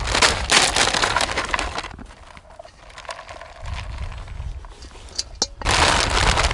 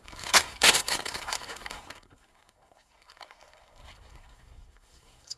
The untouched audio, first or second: first